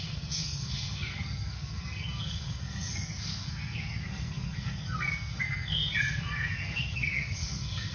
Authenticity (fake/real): fake